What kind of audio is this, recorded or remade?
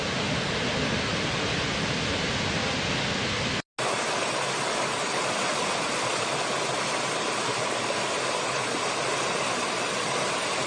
recorded